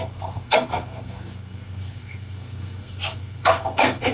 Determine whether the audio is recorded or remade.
remade